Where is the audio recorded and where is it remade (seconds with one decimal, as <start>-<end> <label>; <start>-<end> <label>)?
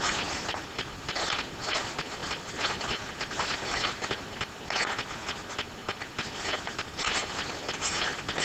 0.0-8.4 recorded